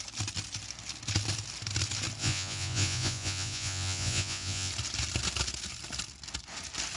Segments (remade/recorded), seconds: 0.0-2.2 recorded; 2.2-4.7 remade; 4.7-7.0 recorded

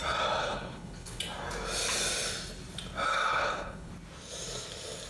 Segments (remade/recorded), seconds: 0.0-0.4 recorded; 0.4-1.2 remade; 1.2-3.3 recorded; 3.3-3.9 remade; 3.9-5.1 recorded

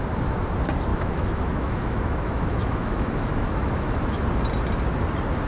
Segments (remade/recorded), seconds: 0.0-0.9 recorded; 0.9-4.2 remade; 4.2-5.5 recorded

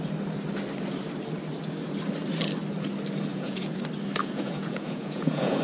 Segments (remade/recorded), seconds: 0.0-3.3 recorded; 3.3-3.8 remade; 3.8-4.2 recorded; 4.2-5.6 remade

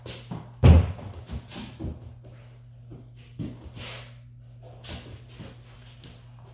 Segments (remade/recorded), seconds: 0.0-6.5 recorded

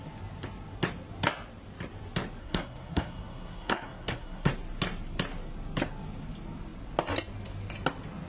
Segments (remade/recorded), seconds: 0.0-2.4 recorded; 2.4-4.5 remade; 4.5-8.3 recorded

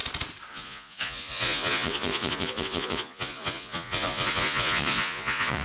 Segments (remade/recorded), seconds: 0.0-0.5 recorded; 0.5-5.6 remade

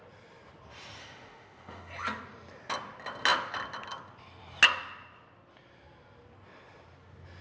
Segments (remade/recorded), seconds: 0.0-1.0 recorded; 1.0-1.9 remade; 1.9-7.4 recorded